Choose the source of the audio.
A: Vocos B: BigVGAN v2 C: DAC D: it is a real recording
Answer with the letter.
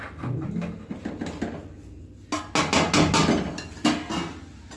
D